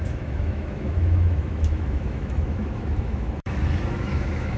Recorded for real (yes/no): no